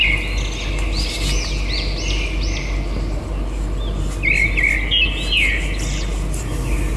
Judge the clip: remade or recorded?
recorded